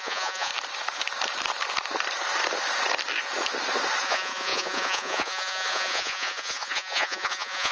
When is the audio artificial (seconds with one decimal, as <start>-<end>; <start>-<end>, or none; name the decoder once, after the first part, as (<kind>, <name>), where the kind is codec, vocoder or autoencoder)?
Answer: 0.0-0.5 (vocoder, Vocos); 4.0-7.7